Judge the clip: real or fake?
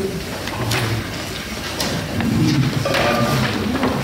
real